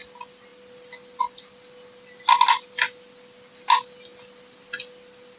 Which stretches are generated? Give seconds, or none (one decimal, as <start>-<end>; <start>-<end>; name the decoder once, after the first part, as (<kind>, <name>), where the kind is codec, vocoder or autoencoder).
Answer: none